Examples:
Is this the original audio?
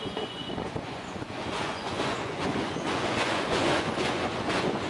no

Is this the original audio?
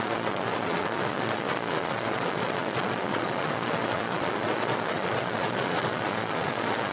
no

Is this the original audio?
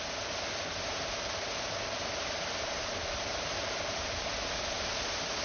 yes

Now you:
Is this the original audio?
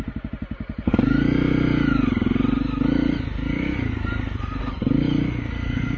yes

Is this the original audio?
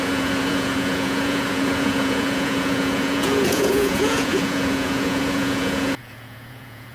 no